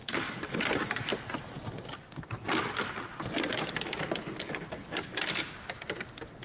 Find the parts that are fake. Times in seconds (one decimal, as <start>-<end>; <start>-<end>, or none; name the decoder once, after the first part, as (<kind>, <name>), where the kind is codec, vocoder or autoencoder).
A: none